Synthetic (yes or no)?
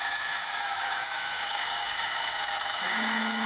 yes